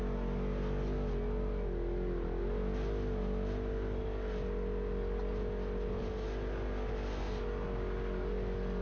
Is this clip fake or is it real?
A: real